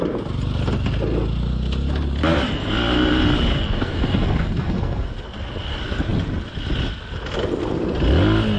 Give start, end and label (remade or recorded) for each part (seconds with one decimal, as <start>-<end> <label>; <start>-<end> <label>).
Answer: 0.0-3.5 recorded; 3.5-5.1 remade; 5.1-8.6 recorded